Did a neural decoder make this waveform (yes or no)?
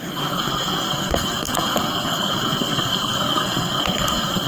yes